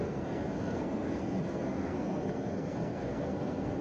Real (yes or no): no